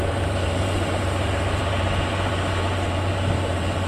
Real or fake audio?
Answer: fake